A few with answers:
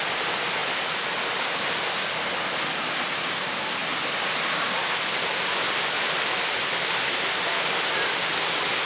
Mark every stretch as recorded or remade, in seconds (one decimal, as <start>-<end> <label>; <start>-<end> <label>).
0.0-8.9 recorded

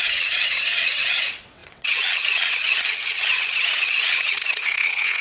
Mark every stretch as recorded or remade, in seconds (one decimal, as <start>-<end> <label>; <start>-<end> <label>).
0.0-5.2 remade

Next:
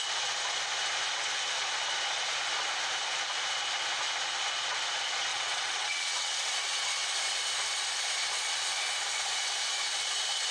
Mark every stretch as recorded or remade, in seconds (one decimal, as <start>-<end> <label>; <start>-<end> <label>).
0.0-5.3 recorded; 5.3-6.4 remade; 6.4-10.5 recorded

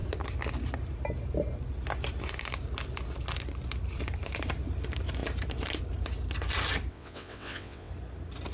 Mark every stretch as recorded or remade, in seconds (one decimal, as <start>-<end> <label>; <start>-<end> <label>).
0.0-6.9 recorded; 6.9-7.9 remade; 7.9-8.5 recorded

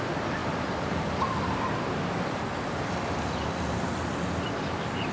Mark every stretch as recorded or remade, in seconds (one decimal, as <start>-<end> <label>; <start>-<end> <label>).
0.0-5.1 recorded